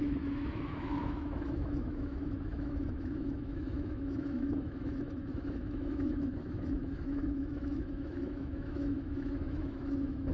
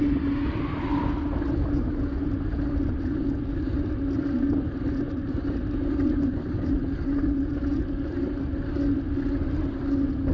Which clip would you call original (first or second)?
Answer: second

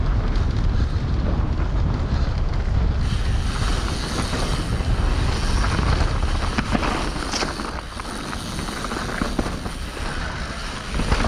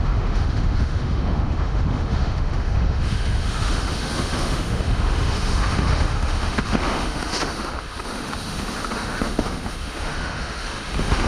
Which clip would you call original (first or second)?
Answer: first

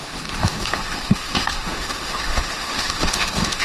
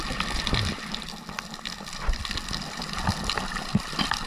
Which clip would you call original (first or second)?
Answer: second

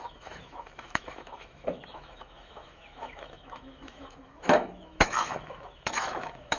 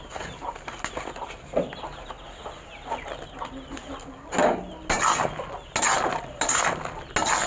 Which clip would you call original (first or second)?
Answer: second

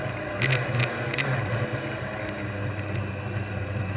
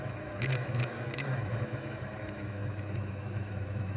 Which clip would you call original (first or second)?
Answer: first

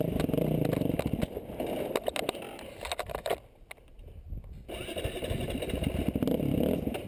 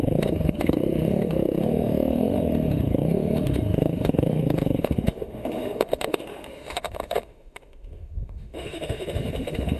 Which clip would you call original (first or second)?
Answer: first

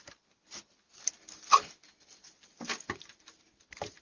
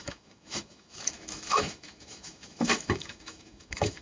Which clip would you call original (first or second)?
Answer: first